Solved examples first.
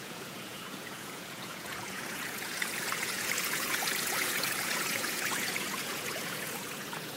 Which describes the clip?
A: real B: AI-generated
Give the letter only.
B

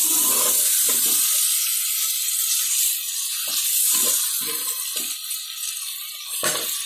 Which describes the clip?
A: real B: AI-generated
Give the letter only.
A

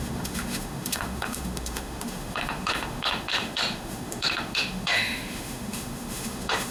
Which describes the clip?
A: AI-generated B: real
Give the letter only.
A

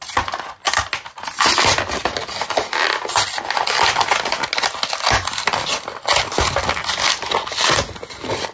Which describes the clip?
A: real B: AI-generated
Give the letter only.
A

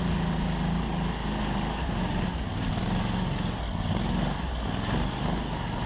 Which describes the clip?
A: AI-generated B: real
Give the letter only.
B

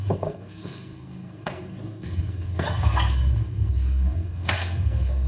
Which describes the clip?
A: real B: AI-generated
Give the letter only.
B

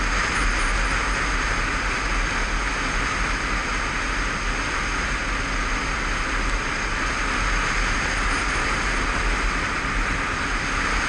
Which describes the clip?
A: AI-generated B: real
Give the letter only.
B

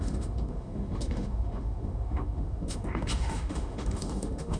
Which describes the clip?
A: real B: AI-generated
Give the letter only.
B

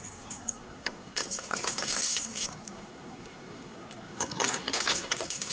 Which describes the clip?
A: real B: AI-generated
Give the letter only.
B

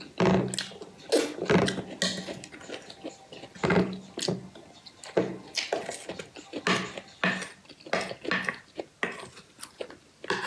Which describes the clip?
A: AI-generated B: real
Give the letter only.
B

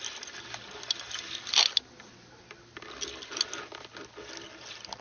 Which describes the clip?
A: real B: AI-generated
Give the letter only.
A